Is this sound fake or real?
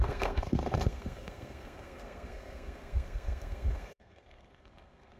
fake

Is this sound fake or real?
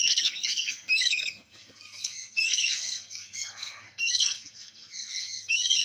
fake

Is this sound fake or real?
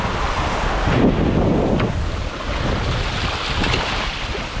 real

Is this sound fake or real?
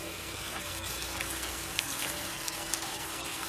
fake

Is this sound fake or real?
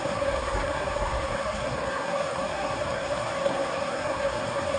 fake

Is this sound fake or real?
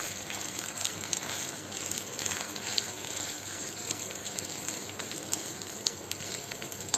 fake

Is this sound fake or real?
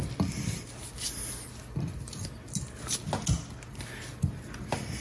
real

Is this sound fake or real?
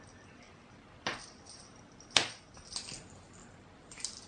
real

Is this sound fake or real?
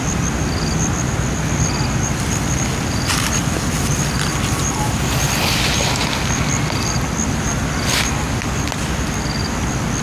real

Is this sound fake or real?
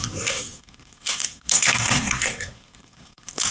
fake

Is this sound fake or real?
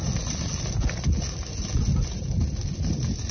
real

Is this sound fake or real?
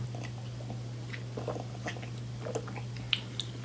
real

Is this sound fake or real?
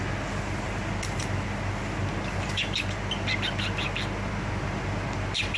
real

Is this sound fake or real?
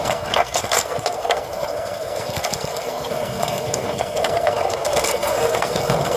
fake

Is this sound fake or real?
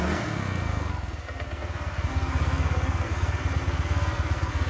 fake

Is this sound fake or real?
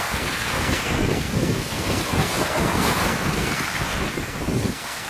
fake